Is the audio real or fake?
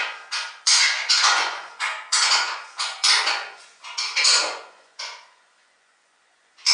fake